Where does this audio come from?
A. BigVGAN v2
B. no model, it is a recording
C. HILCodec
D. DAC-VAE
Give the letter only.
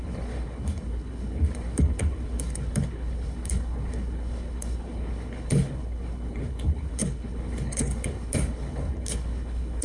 C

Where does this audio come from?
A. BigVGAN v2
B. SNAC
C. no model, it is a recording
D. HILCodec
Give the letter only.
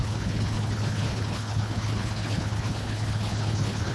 D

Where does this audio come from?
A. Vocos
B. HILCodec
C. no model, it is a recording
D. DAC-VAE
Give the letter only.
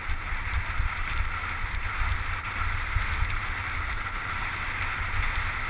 C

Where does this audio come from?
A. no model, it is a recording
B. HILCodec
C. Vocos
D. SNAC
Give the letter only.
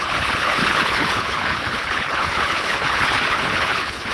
B